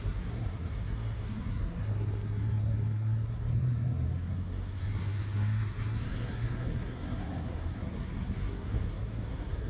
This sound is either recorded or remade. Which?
remade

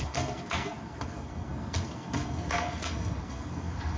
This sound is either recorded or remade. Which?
remade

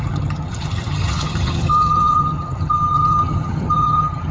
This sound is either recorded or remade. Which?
remade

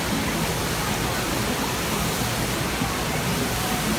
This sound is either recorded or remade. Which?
recorded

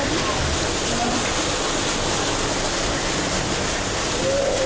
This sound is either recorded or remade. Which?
recorded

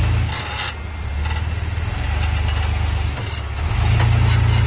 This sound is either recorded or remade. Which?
recorded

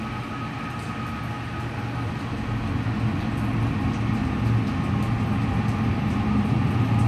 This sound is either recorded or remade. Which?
recorded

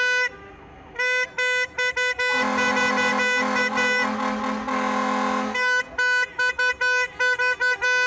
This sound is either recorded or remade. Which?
recorded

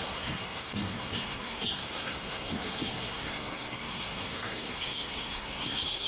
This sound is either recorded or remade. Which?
remade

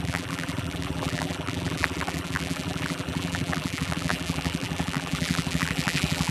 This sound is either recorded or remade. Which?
remade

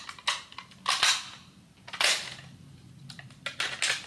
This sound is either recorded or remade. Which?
recorded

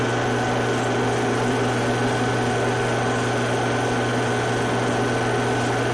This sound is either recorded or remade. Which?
recorded